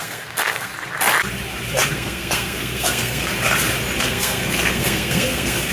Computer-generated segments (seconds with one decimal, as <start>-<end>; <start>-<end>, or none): 0.0-0.7; 1.9-3.3; 4.0-5.7